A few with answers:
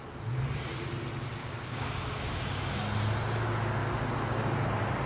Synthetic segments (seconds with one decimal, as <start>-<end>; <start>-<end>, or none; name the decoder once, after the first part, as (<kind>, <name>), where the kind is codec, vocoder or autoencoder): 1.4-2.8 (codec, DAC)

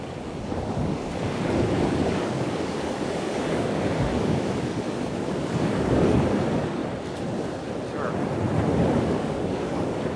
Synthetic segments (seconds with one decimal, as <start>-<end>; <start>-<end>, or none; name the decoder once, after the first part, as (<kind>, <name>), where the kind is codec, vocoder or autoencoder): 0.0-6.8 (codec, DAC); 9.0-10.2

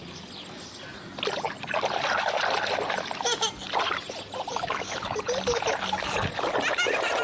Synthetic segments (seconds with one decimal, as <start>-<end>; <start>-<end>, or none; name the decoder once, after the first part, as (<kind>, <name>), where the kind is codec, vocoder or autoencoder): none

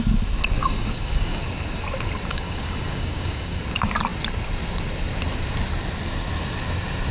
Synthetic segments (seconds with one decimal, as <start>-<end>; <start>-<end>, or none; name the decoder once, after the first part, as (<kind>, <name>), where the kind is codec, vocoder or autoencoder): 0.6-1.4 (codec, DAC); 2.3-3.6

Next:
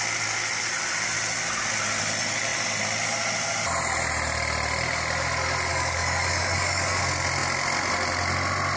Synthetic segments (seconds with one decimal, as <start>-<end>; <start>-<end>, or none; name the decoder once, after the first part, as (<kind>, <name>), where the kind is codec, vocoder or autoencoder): 5.7-7.0 (codec, DAC)

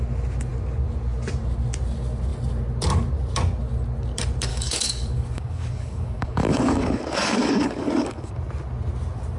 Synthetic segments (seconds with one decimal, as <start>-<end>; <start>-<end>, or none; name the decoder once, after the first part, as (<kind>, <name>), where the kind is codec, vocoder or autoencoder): 4.5-8.3 (codec, DAC)

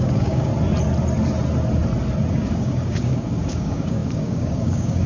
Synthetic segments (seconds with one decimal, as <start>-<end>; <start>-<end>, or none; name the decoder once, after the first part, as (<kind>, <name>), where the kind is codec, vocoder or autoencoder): 0.0-0.5 (codec, DAC); 2.3-5.1